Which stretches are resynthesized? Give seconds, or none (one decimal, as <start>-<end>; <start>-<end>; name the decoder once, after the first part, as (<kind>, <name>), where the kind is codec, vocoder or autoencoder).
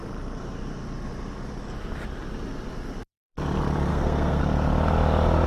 3.9-4.4 (codec, SNAC)